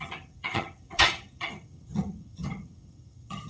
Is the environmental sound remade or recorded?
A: remade